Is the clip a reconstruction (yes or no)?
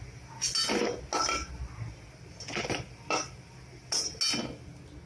no